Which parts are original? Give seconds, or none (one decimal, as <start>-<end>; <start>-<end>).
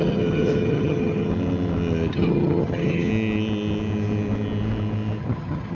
1.3-2.1; 3.1-5.2